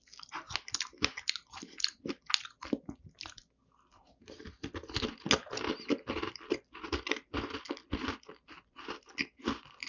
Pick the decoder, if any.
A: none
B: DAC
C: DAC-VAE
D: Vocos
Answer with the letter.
A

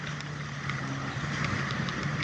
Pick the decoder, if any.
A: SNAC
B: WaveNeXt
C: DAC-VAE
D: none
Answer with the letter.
D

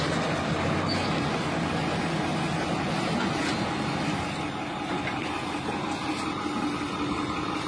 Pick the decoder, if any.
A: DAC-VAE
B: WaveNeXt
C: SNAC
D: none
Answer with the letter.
D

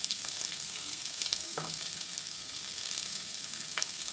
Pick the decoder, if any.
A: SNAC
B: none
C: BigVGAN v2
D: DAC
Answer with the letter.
A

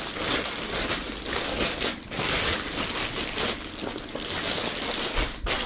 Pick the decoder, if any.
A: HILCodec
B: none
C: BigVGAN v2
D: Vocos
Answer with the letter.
B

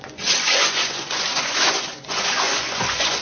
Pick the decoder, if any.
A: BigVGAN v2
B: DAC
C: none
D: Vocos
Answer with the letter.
D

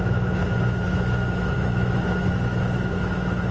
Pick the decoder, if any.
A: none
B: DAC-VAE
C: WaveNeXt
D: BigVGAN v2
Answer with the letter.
B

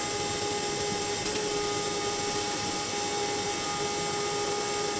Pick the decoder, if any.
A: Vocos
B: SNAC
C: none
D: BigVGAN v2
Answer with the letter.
C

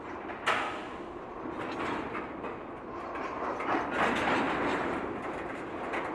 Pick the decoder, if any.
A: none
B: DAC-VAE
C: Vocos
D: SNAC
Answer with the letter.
A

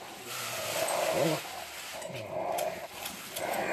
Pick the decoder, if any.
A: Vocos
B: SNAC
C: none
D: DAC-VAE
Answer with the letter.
C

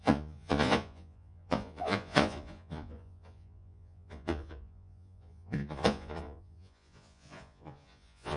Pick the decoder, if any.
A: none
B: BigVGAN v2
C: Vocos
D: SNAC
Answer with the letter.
C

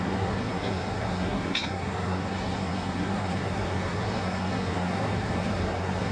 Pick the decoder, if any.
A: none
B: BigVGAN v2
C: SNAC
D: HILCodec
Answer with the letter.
C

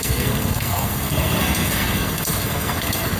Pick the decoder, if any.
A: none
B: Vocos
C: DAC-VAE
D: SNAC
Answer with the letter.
D